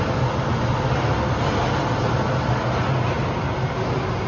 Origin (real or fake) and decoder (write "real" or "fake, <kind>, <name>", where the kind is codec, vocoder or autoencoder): real